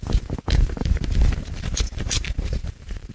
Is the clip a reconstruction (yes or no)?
yes